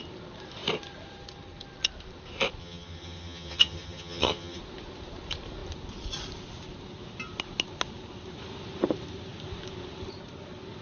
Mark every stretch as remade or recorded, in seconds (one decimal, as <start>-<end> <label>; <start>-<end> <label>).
0.0-2.6 recorded; 2.6-4.6 remade; 4.6-10.8 recorded